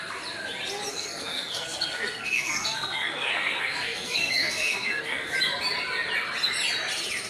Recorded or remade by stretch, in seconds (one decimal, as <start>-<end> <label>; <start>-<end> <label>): 0.0-0.9 recorded; 0.9-5.3 remade; 5.3-7.3 recorded